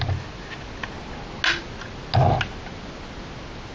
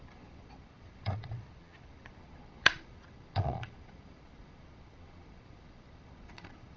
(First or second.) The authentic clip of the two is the first